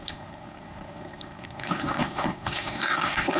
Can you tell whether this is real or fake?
fake